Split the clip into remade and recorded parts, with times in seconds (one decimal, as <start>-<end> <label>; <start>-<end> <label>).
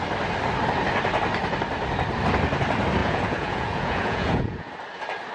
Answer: 0.0-3.0 recorded; 3.0-4.7 remade; 4.7-5.3 recorded